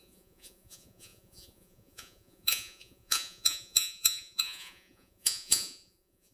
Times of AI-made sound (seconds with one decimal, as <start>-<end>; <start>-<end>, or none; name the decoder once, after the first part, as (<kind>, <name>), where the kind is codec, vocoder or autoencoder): 0.0-6.3 (vocoder, Vocos)